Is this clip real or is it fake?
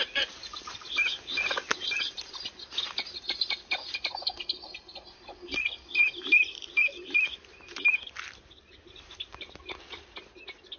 real